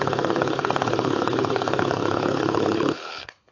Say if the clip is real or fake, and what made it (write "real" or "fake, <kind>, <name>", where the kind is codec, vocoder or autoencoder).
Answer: fake, codec, HILCodec